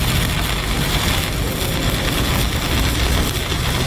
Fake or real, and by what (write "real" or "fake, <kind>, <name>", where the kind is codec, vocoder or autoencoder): real